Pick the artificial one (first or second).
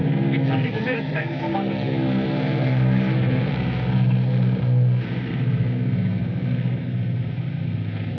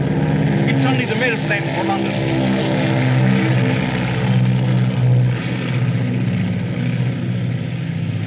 first